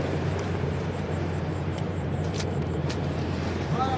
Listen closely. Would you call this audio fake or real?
fake